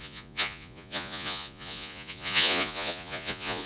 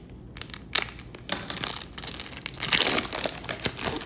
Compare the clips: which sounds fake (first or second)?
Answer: first